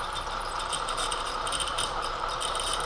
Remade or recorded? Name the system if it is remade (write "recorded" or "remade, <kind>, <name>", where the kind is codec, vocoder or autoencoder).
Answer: remade, vocoder, BigVGAN v2